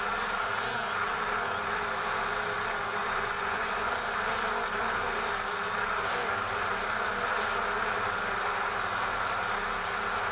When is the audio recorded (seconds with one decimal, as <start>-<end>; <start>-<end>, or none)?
0.0-3.0; 3.9-10.3